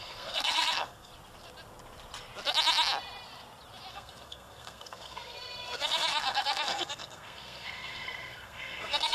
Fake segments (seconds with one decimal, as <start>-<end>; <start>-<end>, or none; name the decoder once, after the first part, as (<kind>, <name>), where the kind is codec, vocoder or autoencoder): 0.0-1.1 (codec, SNAC); 3.9-9.1